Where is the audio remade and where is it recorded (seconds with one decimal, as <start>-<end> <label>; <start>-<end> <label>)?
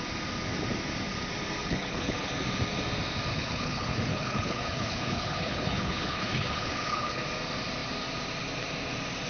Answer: 0.0-1.6 recorded; 1.6-2.3 remade; 2.3-3.3 recorded; 3.3-7.2 remade; 7.2-9.3 recorded